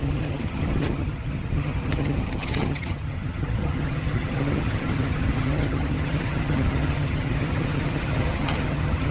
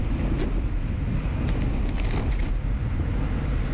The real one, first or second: second